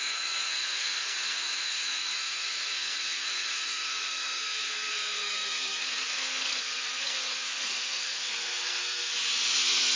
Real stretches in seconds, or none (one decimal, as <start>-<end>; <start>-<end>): 9.1-9.6